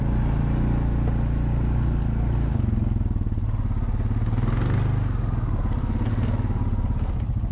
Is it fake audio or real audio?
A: real